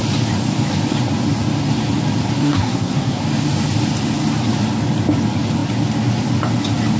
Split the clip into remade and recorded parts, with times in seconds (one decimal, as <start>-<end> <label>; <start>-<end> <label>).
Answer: 0.0-2.4 recorded; 2.4-3.2 remade; 3.2-7.0 recorded